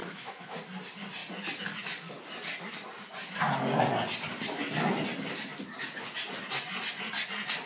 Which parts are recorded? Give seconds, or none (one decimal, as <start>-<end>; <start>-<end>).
0.6-7.7